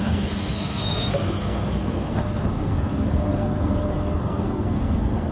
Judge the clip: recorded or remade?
remade